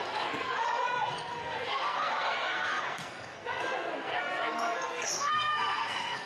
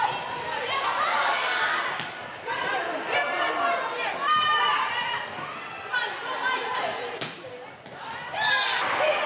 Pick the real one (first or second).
second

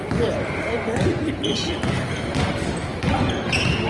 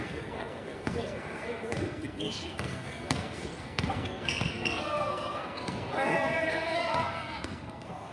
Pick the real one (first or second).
first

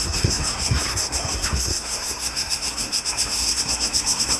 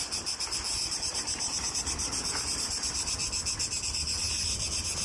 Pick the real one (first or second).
second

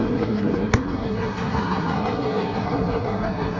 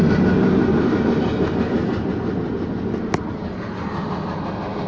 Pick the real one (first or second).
second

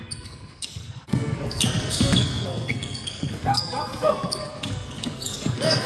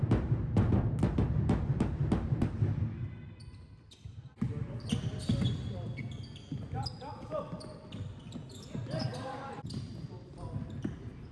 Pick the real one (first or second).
second